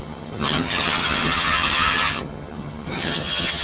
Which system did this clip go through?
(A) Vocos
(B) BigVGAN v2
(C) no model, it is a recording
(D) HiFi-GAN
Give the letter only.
D